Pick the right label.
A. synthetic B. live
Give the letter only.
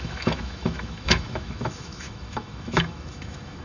A